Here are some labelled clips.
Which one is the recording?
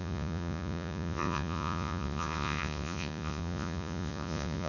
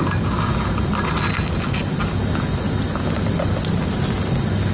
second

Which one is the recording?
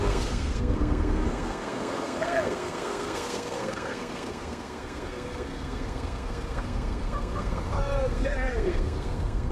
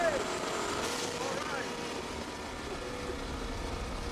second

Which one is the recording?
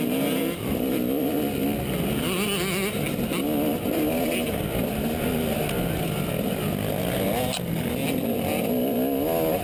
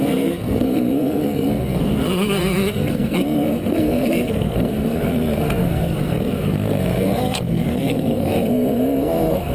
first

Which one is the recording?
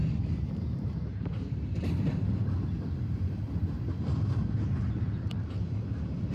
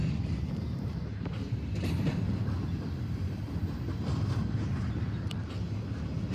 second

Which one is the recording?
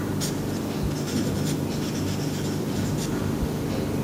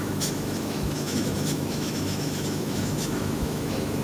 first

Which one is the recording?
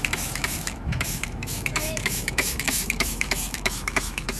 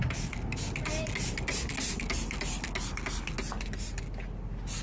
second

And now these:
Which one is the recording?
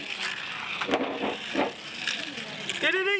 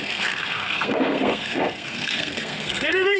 first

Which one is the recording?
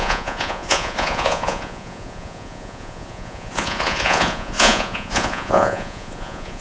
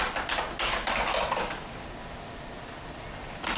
second